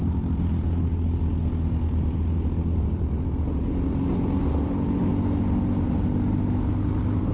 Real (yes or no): yes